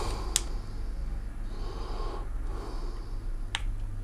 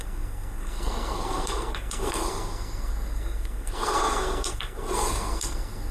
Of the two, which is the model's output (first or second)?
second